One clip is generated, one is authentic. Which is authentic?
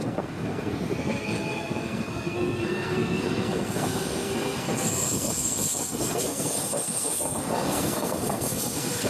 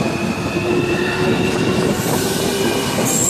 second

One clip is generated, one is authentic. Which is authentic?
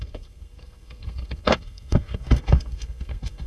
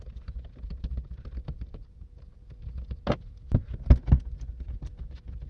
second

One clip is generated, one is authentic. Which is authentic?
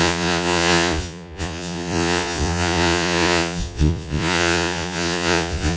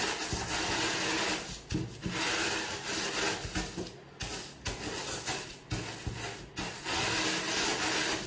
second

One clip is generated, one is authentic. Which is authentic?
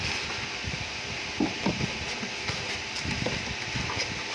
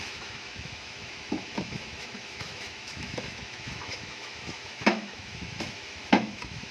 first